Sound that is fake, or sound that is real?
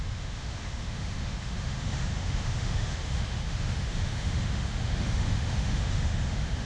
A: fake